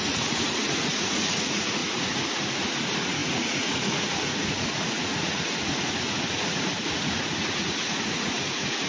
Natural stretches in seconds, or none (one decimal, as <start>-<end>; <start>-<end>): none